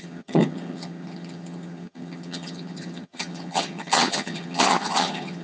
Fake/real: fake